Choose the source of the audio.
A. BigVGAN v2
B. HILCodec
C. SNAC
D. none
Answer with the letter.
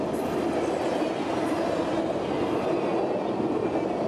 D